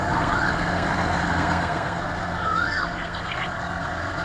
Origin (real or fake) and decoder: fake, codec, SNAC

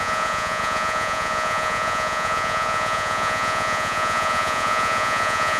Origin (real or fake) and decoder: fake, vocoder, Vocos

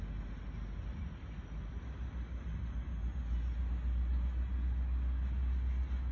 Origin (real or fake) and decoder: real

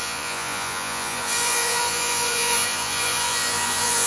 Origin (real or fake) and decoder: fake, vocoder, Vocos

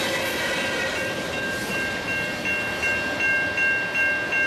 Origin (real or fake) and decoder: real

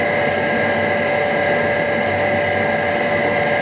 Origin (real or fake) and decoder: real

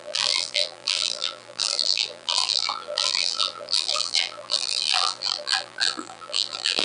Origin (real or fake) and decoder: fake, vocoder, BigVGAN v2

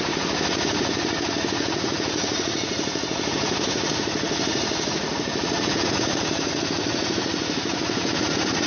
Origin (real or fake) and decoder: fake, vocoder, Vocos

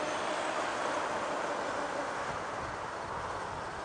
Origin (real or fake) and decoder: real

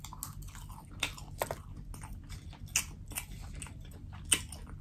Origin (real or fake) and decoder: real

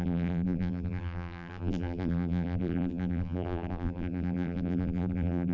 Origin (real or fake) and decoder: fake, vocoder, BigVGAN v2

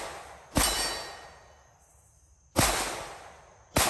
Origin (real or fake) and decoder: real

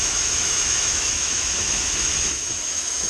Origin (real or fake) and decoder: fake, autoencoder, DAC-VAE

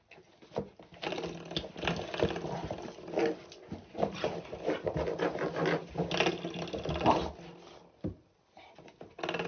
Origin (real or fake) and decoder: real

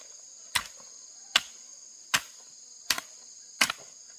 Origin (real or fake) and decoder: real